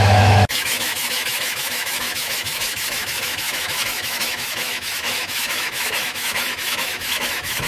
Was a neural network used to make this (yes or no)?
yes